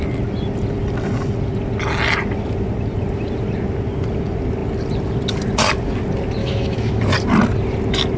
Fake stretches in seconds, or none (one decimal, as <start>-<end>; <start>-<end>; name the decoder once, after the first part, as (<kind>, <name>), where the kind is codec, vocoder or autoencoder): 6.4-7.0 (autoencoder, DAC-VAE)